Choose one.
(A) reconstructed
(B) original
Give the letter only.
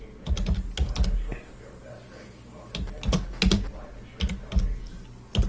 B